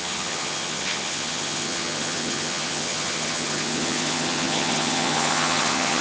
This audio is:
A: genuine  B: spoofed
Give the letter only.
B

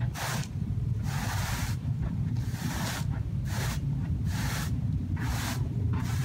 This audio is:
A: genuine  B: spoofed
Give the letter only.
B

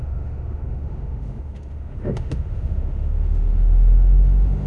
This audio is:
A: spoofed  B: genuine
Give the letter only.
A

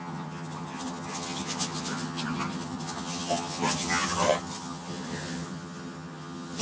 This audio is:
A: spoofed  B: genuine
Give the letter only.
A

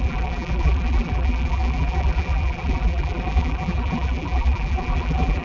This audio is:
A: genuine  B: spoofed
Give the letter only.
B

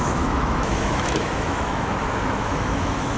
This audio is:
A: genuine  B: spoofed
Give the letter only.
B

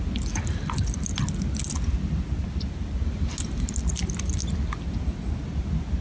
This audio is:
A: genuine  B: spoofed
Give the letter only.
A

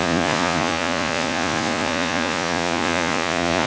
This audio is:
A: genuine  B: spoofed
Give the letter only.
B